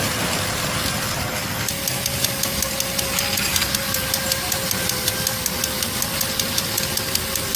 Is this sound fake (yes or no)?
no